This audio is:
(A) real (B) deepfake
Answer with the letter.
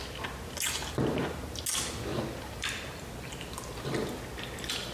A